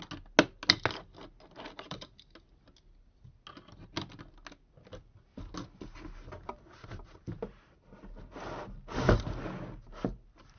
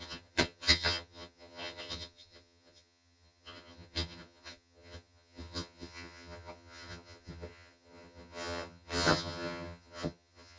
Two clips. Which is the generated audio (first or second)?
second